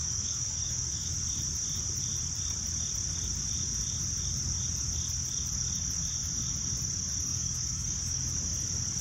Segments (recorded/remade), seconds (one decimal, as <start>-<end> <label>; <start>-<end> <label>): 0.0-1.1 remade; 1.1-7.3 recorded; 7.3-8.2 remade; 8.2-9.0 recorded